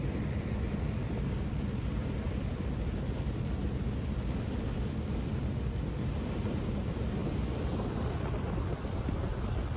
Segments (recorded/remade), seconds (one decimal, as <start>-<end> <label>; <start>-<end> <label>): 0.0-9.8 recorded